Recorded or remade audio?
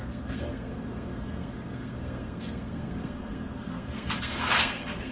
remade